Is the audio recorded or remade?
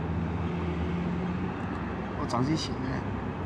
recorded